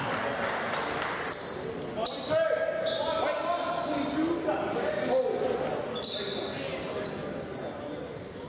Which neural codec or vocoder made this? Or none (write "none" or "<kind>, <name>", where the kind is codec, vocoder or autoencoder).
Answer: none